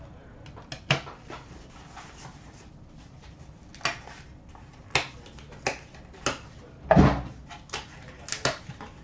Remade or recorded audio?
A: recorded